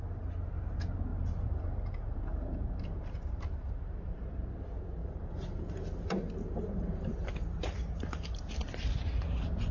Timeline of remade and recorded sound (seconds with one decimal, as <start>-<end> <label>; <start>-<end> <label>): 0.0-1.1 recorded; 1.1-4.3 remade; 4.3-5.0 recorded; 5.0-7.3 remade; 7.3-9.7 recorded